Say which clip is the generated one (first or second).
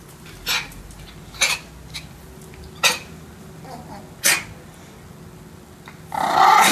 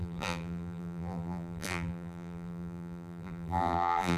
second